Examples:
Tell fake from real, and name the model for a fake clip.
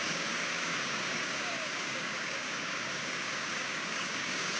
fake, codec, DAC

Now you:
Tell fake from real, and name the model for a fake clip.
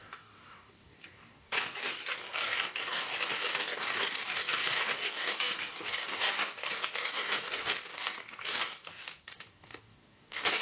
fake, codec, DAC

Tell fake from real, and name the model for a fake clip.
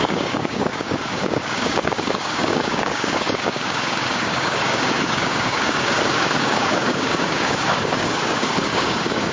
fake, codec, DAC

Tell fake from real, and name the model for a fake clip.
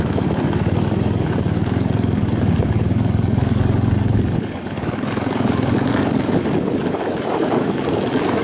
fake, codec, DAC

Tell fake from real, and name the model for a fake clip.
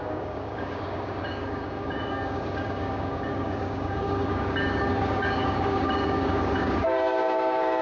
fake, codec, DAC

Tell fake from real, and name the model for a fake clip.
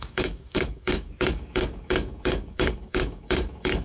fake, codec, DAC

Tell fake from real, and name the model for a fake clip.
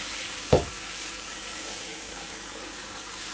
fake, codec, DAC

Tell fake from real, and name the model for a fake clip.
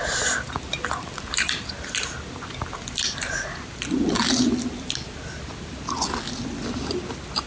real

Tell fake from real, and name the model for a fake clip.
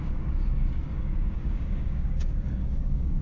fake, codec, DAC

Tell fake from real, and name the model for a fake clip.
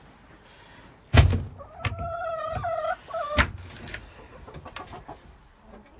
real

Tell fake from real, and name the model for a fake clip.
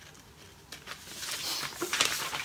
real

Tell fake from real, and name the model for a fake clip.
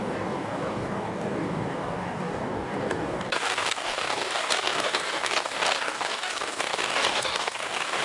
fake, codec, DAC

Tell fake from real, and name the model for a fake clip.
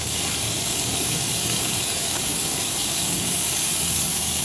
fake, codec, DAC